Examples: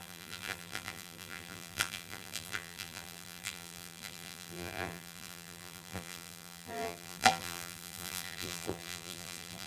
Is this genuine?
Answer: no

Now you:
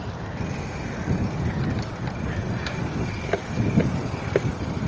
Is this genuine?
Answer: yes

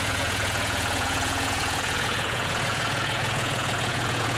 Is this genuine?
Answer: no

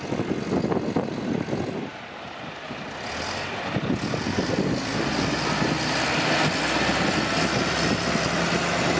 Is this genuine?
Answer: yes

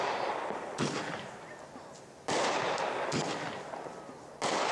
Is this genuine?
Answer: yes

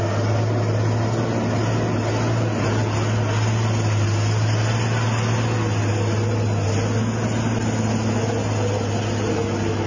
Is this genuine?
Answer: yes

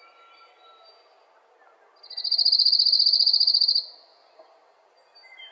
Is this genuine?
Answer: yes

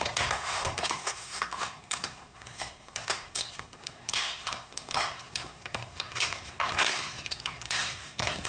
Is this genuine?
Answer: no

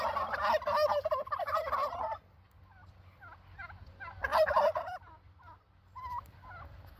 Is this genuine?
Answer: yes